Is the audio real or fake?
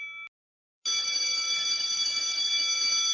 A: real